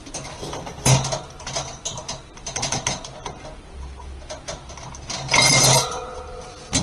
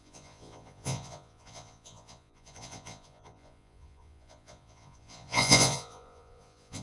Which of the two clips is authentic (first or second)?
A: first